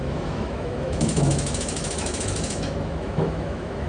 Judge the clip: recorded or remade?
remade